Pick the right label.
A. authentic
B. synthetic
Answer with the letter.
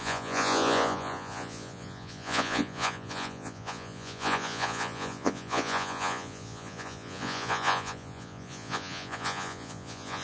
B